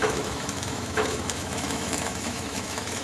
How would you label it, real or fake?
fake